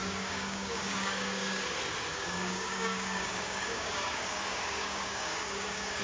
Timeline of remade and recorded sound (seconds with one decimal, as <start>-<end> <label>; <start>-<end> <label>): 0.0-1.6 remade; 1.6-2.1 recorded; 2.1-6.0 remade